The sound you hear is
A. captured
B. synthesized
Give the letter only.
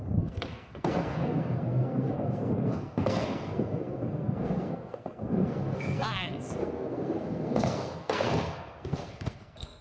B